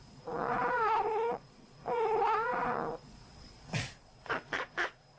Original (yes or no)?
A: no